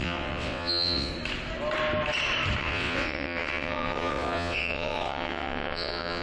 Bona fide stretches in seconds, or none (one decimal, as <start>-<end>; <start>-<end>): 1.1-2.6